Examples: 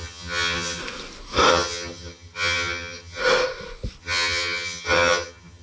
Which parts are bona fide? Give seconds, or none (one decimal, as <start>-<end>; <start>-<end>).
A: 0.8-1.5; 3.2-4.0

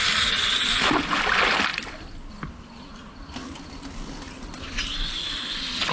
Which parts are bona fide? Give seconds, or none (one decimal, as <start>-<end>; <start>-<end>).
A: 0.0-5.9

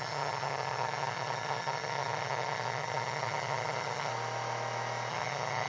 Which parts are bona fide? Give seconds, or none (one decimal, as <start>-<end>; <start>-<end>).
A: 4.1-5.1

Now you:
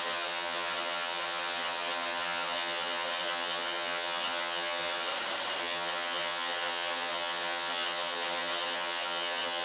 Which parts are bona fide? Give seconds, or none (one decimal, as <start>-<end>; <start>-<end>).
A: 5.1-5.6